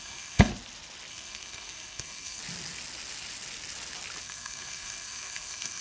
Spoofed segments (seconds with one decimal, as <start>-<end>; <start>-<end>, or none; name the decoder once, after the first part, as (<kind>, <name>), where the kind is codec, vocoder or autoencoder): 0.0-0.5 (codec, SNAC); 1.1-2.4; 4.2-5.8